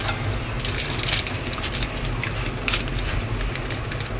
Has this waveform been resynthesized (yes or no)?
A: no